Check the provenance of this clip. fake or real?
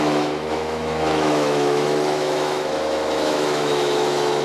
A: fake